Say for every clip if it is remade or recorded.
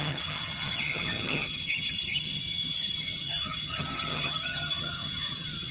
remade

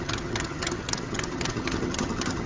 remade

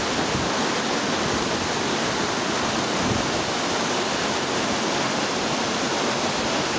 recorded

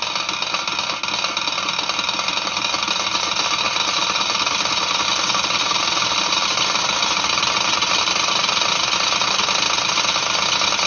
recorded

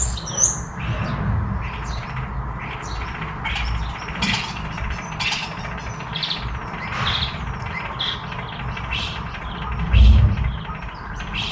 recorded